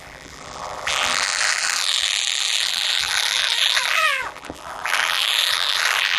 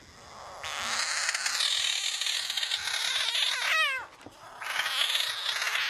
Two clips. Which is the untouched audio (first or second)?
second